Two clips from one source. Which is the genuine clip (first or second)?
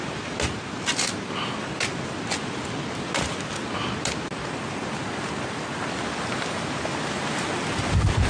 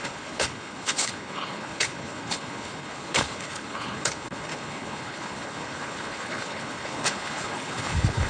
first